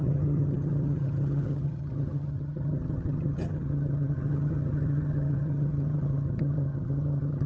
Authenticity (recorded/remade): remade